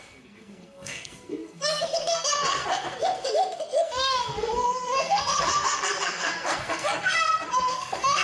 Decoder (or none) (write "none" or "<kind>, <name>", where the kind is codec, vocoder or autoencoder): codec, SNAC